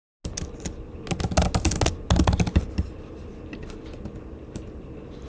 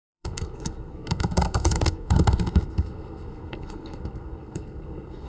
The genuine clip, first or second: first